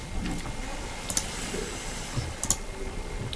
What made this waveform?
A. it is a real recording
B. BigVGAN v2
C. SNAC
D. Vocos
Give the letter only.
A